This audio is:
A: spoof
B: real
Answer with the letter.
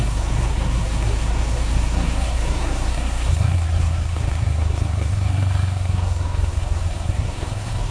A